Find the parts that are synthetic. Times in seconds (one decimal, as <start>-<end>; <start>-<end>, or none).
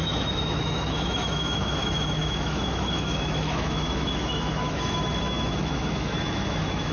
0.0-6.9